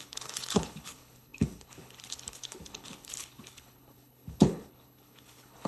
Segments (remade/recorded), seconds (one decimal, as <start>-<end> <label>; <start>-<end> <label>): 0.0-5.7 remade